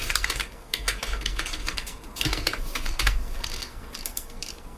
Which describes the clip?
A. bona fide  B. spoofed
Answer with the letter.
B